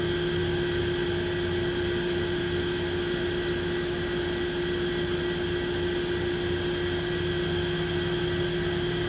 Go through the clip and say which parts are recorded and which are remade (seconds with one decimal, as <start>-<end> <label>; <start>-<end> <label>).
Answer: 0.0-9.1 recorded